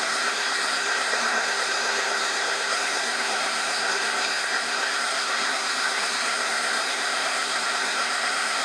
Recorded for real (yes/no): no